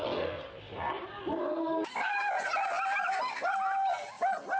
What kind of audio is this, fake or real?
real